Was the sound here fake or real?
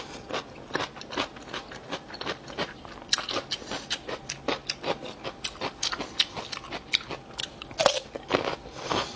real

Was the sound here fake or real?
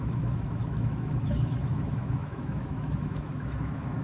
fake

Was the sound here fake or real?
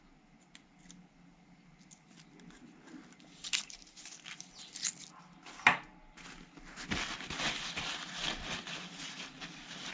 real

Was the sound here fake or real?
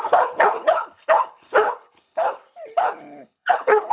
fake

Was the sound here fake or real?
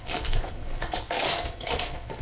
fake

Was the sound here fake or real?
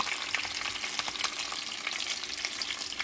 real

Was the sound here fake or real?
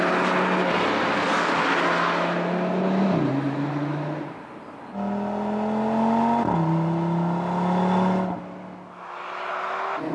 real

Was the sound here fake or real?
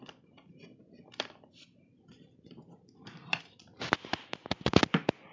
real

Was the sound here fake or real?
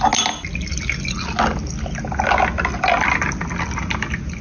real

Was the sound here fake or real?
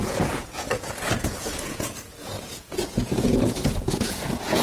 fake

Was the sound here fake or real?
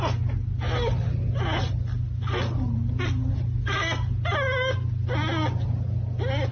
real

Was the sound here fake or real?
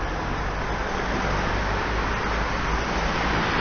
real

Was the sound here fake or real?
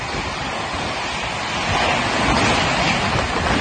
real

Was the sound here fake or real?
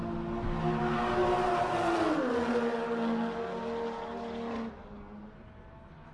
real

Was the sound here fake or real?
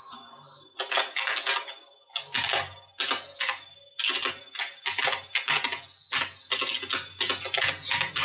real